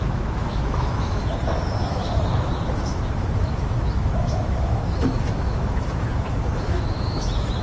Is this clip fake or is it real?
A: fake